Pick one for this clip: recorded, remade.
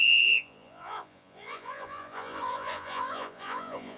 remade